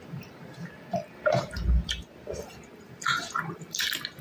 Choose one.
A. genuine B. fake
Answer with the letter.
A